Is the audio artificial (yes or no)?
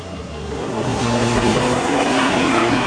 yes